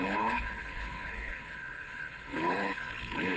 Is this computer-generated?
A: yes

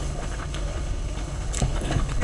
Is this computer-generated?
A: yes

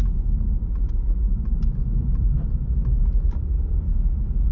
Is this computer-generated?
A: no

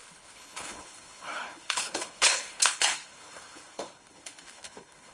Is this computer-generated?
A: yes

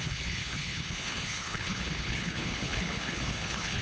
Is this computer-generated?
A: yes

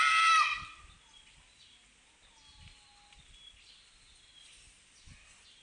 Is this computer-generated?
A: no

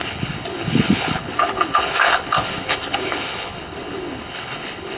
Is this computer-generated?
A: yes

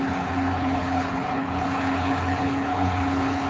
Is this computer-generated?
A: yes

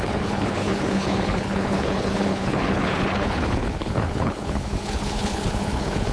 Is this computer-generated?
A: yes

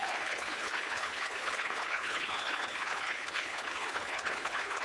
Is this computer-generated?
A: yes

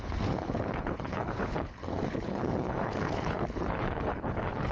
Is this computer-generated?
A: yes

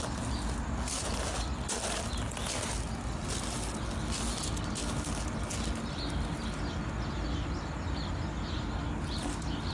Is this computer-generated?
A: no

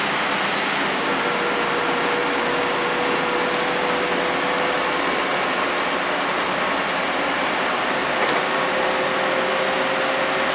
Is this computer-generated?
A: no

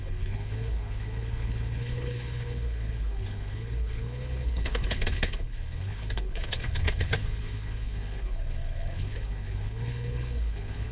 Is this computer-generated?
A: yes